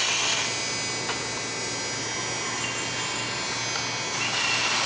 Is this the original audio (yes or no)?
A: yes